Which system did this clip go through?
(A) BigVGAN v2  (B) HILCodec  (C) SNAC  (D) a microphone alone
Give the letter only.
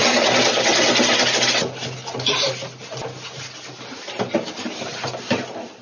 D